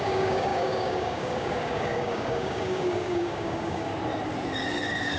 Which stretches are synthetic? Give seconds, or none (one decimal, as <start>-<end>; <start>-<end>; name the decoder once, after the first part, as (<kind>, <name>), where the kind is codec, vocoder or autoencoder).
0.0-3.9 (codec, DAC)